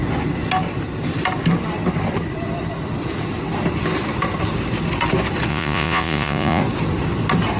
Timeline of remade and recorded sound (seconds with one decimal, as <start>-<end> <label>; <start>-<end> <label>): 0.0-5.5 recorded; 5.5-6.6 remade; 6.6-7.6 recorded